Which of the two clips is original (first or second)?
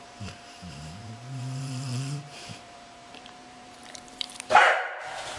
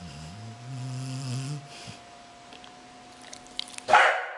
second